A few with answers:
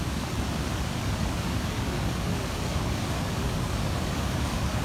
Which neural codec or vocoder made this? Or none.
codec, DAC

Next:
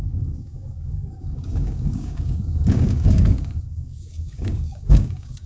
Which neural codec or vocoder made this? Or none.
codec, DAC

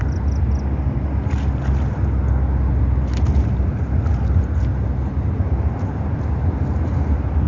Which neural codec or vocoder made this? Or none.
none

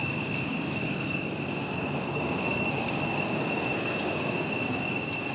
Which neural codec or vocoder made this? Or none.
codec, DAC